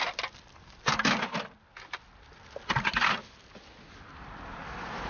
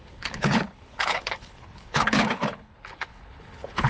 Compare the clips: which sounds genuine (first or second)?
first